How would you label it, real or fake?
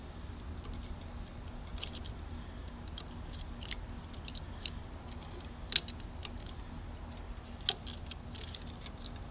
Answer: real